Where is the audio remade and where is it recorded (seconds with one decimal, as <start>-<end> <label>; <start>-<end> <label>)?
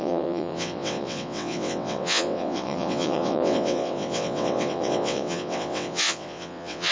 0.0-6.9 remade